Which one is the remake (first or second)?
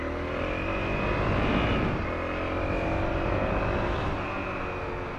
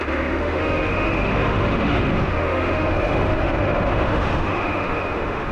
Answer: second